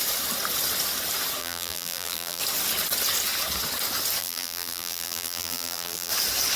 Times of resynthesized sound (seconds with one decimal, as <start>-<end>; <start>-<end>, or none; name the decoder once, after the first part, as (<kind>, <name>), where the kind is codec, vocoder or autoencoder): 1.4-2.4 (vocoder, BigVGAN v2); 4.2-6.1